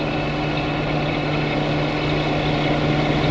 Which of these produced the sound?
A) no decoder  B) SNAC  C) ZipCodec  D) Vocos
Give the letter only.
A